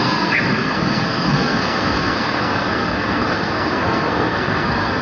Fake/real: fake